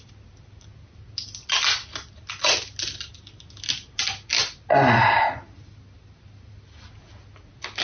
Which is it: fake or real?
real